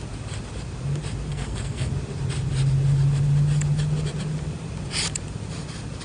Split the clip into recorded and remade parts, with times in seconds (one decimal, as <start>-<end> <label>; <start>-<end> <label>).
0.0-1.3 recorded; 1.3-1.9 remade; 1.9-6.0 recorded